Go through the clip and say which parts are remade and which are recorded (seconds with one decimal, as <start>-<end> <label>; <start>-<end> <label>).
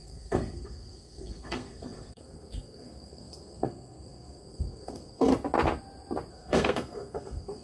0.0-5.3 remade; 5.3-6.3 recorded; 6.3-7.6 remade